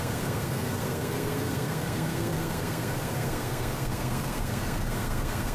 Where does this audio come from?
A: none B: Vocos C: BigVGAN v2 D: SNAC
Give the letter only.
D